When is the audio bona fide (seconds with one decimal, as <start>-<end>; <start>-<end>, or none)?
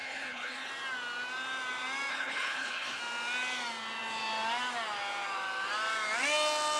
0.7-2.1; 3.0-6.8